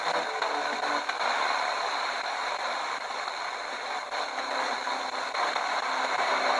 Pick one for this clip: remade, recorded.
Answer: recorded